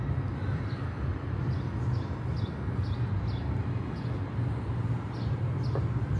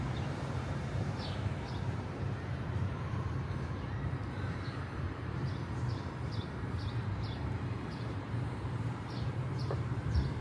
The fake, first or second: second